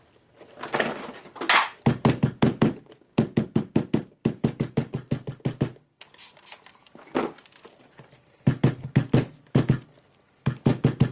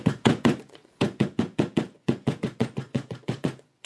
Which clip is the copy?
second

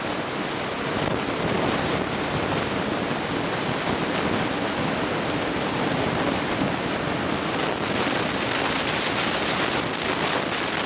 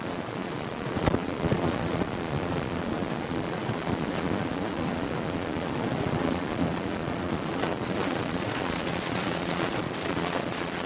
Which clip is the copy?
second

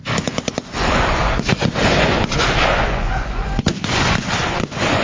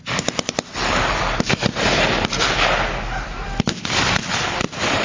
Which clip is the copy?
first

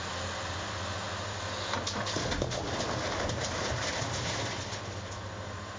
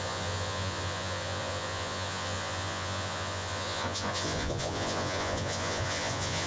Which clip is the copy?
second